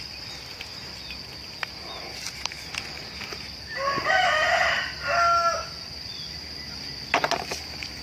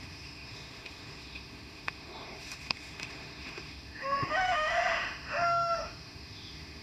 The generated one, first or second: second